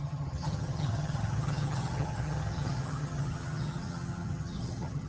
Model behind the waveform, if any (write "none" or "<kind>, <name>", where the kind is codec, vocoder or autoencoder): vocoder, HiFi-GAN